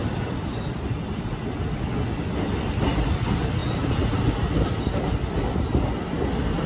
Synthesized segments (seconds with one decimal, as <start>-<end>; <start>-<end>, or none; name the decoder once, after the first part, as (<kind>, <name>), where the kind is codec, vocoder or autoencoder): none